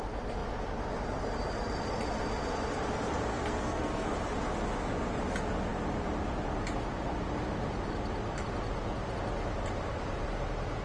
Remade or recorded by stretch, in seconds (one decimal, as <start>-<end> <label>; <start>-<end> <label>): 0.0-3.3 recorded; 3.3-4.1 remade; 4.1-10.8 recorded